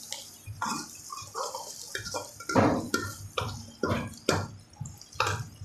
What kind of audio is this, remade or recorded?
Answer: recorded